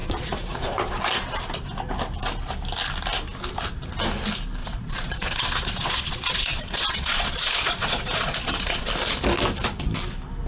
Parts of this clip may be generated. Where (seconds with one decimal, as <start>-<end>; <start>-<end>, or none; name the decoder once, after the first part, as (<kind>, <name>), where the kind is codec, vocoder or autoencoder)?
0.0-1.0 (vocoder, Vocos); 4.6-8.9